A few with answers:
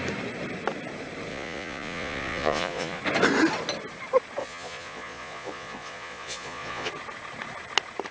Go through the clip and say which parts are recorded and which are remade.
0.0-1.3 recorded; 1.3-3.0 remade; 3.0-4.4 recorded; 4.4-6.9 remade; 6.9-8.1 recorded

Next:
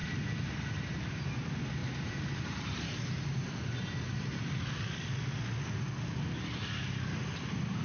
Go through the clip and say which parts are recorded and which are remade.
0.0-1.2 remade; 1.2-1.8 recorded; 1.8-4.4 remade; 4.4-7.8 recorded

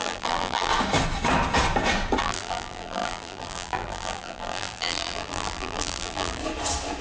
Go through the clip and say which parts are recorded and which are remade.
0.0-0.7 remade; 0.7-2.2 recorded; 2.2-6.4 remade; 6.4-7.0 recorded